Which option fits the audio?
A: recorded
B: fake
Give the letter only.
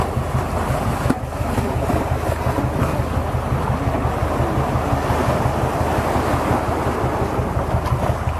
A